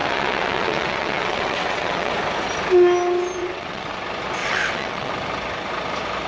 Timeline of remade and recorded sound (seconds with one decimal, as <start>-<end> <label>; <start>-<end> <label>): 0.0-2.1 remade; 2.1-3.4 recorded; 3.4-4.0 remade; 4.0-4.4 recorded; 4.4-5.1 remade; 5.1-6.3 recorded